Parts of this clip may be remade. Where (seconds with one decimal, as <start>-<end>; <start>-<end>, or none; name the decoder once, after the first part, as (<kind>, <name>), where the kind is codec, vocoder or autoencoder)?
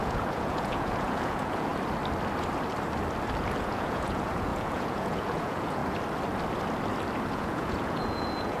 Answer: 0.0-1.7 (vocoder, Vocos); 3.6-5.8; 7.3-8.6